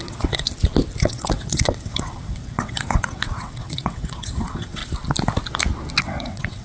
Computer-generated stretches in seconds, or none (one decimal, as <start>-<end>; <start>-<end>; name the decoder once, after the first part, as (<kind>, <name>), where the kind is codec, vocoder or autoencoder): 0.0-0.5 (vocoder, WaveNeXt); 1.0-4.8; 6.0-6.6